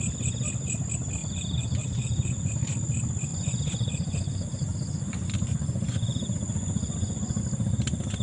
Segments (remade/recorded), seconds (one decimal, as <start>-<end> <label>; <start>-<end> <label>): 0.0-1.2 recorded; 1.2-2.5 remade; 2.5-3.3 recorded; 3.3-7.4 remade; 7.4-8.2 recorded